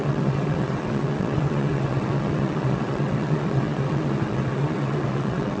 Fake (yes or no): yes